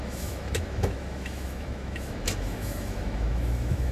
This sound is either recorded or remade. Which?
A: remade